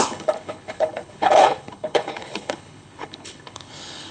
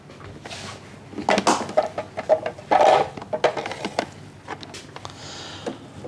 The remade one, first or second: first